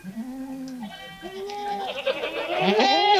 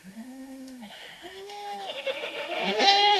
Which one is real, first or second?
first